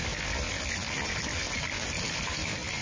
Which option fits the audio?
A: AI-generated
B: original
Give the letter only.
B